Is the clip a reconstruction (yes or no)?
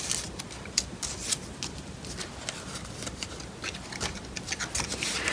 no